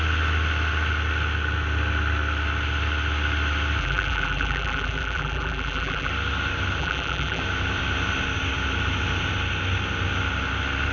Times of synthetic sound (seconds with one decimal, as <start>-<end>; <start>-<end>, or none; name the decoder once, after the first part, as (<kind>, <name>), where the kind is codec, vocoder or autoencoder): 3.8-6.1 (vocoder, BigVGAN v2); 6.8-7.4